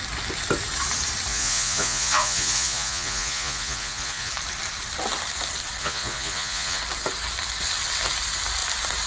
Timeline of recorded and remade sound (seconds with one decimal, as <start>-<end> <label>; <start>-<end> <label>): 0.0-1.3 recorded; 1.3-4.3 remade; 4.3-5.8 recorded; 5.8-6.8 remade; 6.8-9.1 recorded